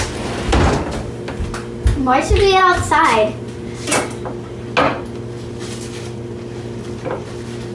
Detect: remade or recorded recorded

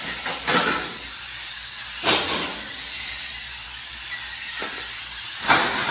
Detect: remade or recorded recorded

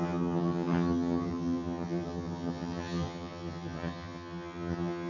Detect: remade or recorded remade